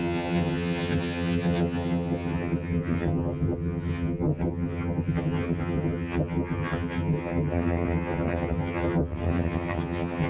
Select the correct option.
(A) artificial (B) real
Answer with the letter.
A